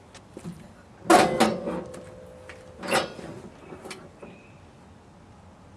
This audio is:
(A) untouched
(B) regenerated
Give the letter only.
A